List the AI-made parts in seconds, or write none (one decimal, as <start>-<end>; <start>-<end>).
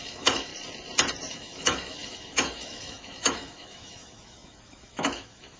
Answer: 0.0-0.5; 1.3-5.6